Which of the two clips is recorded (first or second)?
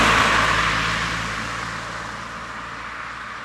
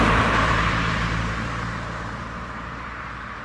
first